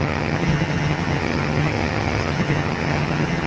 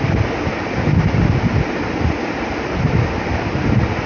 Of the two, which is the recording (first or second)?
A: second